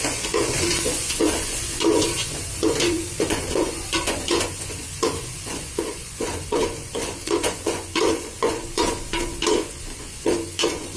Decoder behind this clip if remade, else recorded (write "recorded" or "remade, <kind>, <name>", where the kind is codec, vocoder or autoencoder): remade, vocoder, Vocos